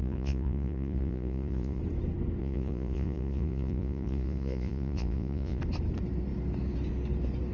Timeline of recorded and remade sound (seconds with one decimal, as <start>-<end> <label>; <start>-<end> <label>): 0.0-1.8 remade; 1.8-2.4 recorded; 2.4-5.6 remade; 5.6-7.5 recorded